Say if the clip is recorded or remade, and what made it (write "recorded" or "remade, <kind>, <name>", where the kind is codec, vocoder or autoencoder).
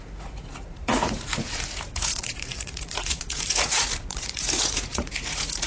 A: remade, vocoder, Vocos